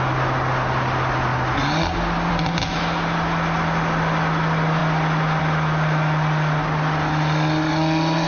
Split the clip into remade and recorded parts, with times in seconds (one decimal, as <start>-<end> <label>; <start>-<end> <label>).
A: 0.0-8.3 recorded